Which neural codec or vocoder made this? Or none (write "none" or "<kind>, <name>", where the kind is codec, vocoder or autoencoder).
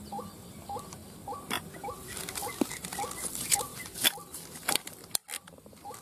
none